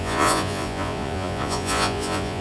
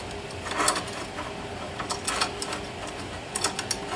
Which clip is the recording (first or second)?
second